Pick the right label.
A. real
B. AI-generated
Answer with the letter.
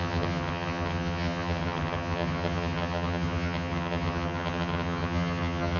B